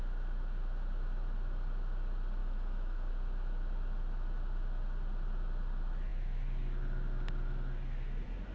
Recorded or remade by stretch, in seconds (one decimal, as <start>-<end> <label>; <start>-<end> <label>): 0.0-2.4 recorded; 2.4-3.1 remade; 3.1-8.5 recorded